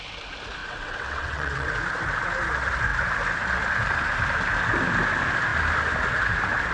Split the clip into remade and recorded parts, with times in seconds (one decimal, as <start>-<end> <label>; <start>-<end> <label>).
0.0-0.6 recorded; 0.6-1.7 remade; 1.7-6.7 recorded